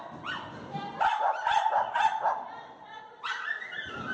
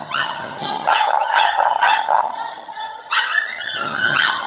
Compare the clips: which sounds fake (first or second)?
second